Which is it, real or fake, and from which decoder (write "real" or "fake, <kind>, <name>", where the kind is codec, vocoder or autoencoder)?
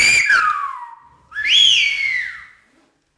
real